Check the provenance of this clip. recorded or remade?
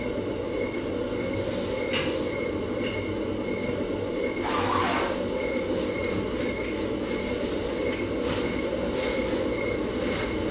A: recorded